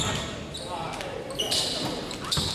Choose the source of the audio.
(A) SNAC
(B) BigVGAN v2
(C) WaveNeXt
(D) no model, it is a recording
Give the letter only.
D